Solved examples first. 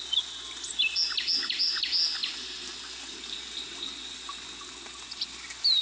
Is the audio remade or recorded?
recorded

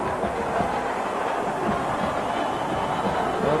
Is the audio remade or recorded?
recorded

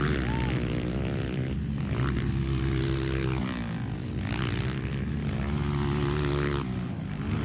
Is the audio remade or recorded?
recorded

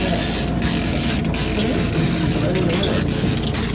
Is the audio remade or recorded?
recorded